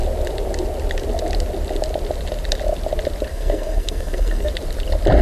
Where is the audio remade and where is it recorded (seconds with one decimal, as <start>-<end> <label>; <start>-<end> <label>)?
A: 0.0-3.3 recorded; 3.3-4.5 remade; 4.5-5.2 recorded